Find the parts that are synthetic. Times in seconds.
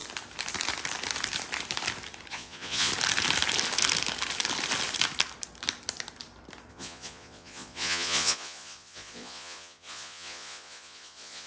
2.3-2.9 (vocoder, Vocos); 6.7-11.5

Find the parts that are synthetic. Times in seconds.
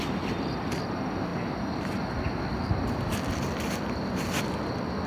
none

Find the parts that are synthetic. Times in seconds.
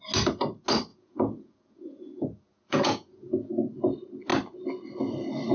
0.9-3.5 (vocoder, Vocos)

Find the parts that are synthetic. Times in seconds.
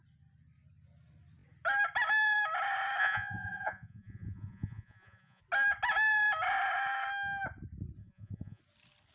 3.0-5.4 (vocoder, Vocos); 8.0-8.6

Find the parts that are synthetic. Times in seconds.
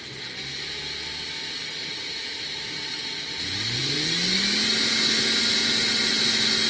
none